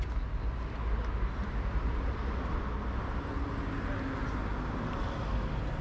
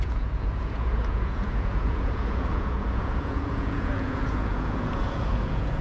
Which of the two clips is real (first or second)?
first